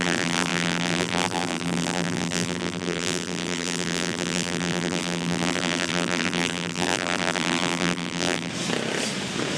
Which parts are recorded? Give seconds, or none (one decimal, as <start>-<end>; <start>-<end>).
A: 8.5-9.6